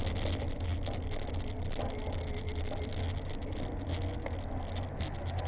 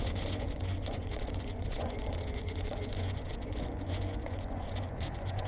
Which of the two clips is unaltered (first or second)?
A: first